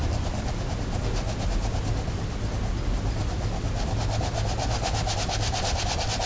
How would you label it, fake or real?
real